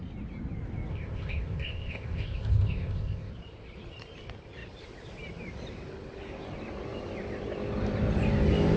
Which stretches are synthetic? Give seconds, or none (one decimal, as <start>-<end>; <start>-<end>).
0.9-3.3